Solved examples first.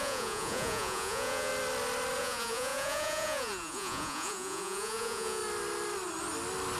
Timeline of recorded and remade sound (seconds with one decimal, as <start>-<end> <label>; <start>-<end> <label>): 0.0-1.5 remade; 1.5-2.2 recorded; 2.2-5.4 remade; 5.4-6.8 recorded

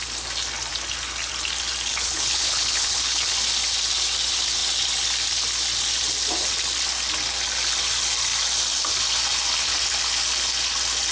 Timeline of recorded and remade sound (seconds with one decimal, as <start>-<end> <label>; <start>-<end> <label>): 0.0-1.9 recorded; 1.9-3.3 remade; 3.3-11.1 recorded

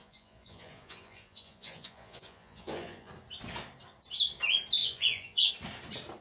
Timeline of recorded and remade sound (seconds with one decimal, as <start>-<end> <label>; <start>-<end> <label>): 0.0-3.1 remade; 3.1-4.8 recorded; 4.8-5.5 remade; 5.5-6.2 recorded